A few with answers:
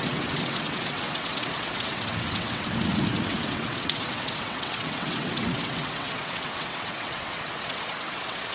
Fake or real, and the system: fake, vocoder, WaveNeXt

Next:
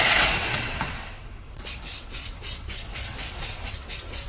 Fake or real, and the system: fake, vocoder, WaveNeXt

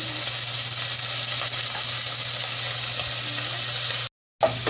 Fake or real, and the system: real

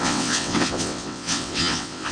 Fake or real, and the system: fake, vocoder, WaveNeXt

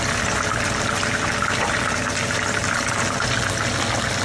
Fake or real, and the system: real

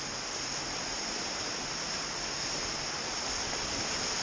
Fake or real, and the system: real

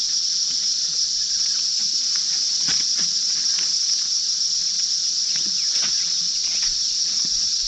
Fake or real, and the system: fake, vocoder, WaveNeXt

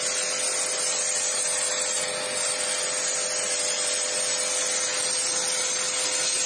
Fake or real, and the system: real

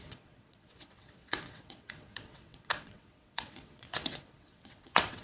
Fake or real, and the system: fake, vocoder, WaveNeXt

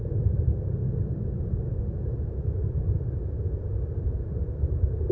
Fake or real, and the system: real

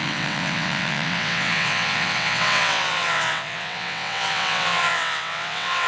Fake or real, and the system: fake, vocoder, WaveNeXt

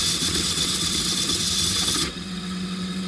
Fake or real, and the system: fake, vocoder, WaveNeXt